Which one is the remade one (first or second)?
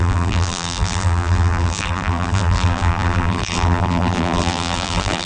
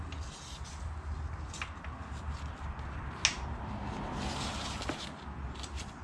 first